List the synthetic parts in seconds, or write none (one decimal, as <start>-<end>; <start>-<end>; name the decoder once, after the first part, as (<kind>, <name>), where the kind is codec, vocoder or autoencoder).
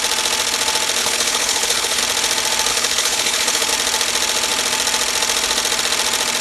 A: 1.0-2.0 (codec, HILCodec); 2.7-3.7